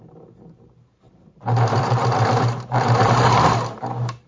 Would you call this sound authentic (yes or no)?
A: no